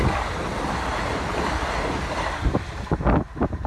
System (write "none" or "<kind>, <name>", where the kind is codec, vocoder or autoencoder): none